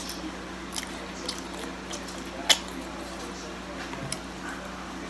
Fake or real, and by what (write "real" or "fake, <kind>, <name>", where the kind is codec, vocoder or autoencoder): real